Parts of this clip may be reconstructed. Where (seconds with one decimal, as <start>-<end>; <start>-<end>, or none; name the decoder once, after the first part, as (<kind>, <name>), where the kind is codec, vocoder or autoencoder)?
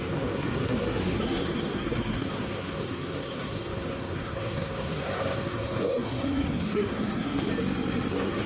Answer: 0.0-7.5 (codec, SNAC); 8.1-8.5